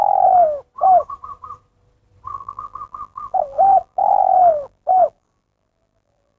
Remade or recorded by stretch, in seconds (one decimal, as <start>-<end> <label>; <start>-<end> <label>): 0.0-0.4 remade; 0.4-2.3 recorded; 2.3-6.4 remade